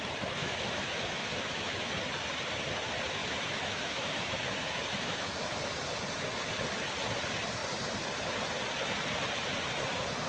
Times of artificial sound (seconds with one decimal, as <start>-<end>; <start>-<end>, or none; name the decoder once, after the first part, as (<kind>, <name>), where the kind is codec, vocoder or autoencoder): 0.4-1.9 (autoencoder, DAC-VAE); 3.2-5.4